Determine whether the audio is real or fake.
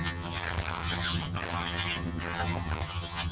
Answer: fake